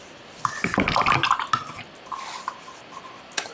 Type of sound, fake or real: real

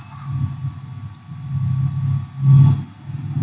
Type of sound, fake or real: real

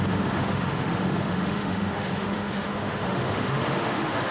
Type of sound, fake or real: fake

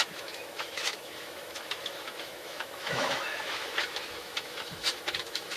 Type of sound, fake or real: fake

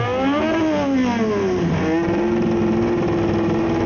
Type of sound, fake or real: real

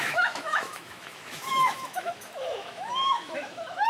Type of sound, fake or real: fake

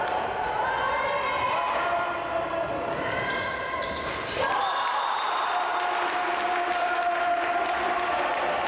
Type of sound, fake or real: real